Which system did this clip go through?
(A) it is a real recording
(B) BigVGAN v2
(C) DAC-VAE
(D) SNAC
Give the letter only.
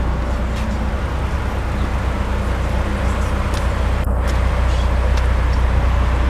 A